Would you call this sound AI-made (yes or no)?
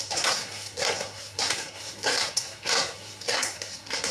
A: yes